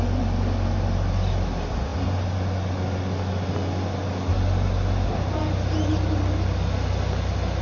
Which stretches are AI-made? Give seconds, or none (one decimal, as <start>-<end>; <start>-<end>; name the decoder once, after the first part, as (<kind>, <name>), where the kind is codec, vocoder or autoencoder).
none